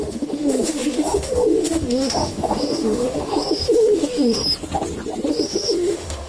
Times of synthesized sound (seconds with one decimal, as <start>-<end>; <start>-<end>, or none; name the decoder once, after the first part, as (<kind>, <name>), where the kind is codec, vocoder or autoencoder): 0.0-4.4 (autoencoder, DAC-VAE); 5.3-6.3